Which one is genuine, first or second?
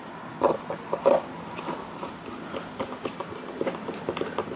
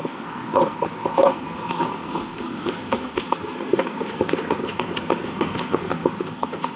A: first